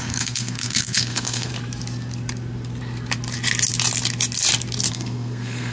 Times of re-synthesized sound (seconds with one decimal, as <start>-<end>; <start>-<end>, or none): 0.0-1.5; 4.9-5.7